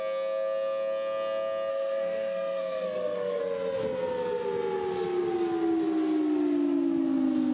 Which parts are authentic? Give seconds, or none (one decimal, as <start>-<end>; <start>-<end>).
0.0-1.7; 3.4-7.5